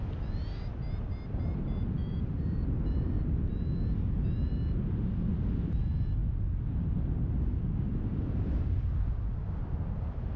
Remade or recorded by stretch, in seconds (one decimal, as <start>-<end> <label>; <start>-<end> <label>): 0.0-2.0 recorded; 2.0-3.1 remade; 3.1-10.4 recorded